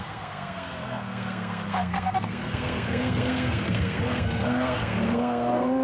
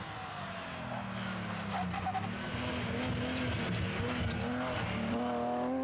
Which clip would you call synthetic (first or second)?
first